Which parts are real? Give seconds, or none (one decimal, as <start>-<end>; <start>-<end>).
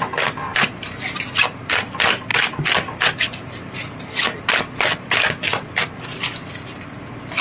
0.0-7.4